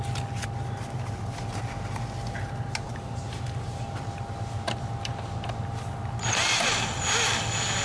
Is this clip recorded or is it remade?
recorded